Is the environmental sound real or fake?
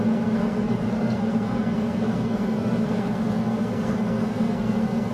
fake